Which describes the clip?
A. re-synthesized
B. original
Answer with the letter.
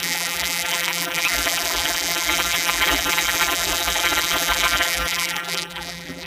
A